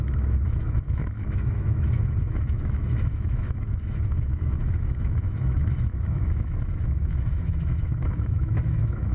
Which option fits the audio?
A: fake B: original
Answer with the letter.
A